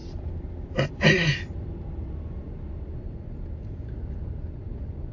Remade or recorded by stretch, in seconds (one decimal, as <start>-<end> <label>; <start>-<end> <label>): 0.0-5.1 recorded